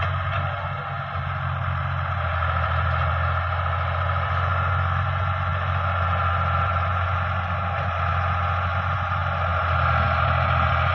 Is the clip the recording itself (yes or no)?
yes